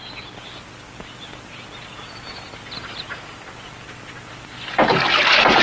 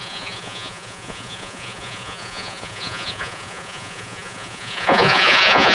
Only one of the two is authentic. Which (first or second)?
first